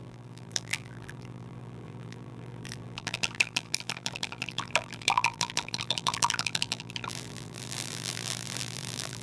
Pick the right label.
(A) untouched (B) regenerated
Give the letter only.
B